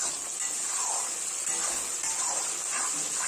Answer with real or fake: real